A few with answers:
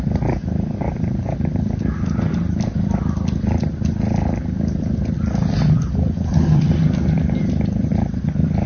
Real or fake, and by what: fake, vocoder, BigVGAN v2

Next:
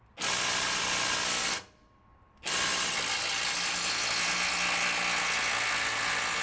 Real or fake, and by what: real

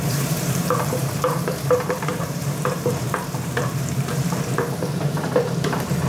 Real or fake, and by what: fake, vocoder, BigVGAN v2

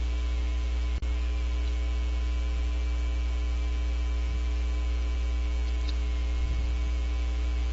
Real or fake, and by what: real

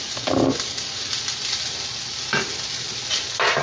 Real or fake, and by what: real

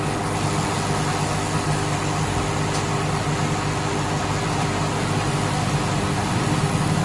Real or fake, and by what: real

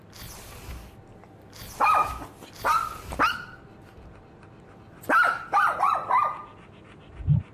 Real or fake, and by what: real